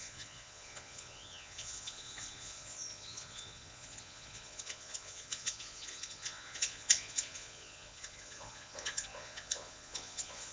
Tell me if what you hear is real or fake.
fake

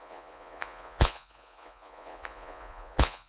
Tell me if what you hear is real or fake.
fake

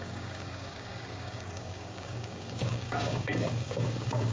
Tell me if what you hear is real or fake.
fake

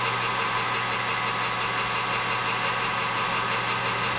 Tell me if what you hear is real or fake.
real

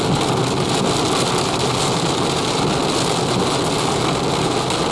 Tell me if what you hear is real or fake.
real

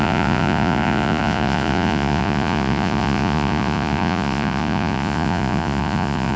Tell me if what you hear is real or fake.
fake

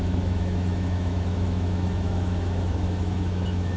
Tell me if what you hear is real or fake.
fake